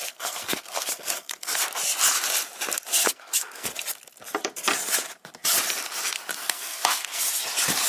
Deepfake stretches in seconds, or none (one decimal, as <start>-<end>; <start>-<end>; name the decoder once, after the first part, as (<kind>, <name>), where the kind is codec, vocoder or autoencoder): 0.0-1.6 (codec, SNAC); 2.9-3.7; 6.4-7.2